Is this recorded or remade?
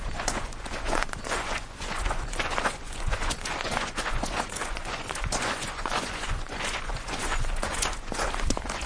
remade